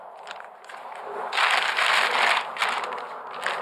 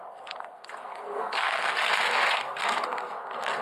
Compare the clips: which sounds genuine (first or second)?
first